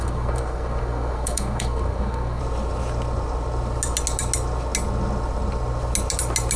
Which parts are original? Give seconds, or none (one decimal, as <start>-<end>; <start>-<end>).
2.4-6.6